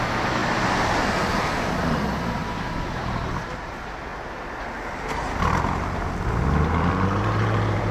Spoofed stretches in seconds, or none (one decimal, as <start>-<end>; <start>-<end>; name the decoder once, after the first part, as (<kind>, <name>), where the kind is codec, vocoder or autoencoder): 0.0-0.4 (vocoder, BigVGAN v2); 1.4-2.4; 3.5-4.1; 6.9-7.9